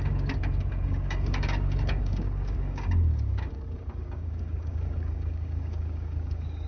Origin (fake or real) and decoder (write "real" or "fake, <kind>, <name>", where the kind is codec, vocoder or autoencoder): fake, codec, DAC